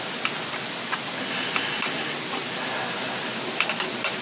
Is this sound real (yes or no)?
yes